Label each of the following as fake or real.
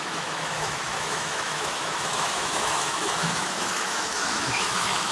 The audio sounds fake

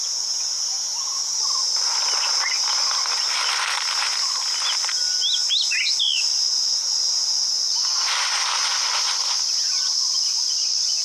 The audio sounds real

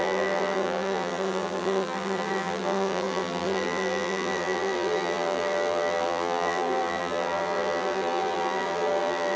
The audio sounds fake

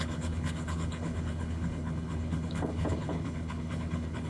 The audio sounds fake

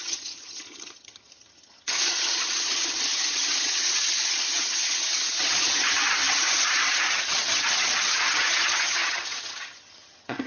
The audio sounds fake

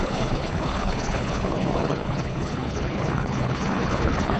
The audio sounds fake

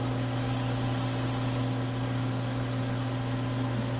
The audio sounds real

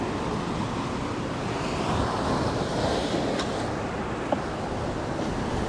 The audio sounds real